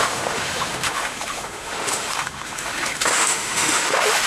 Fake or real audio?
fake